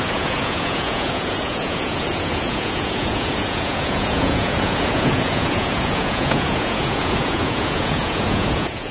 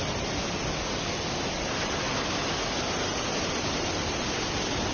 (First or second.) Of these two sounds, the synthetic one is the first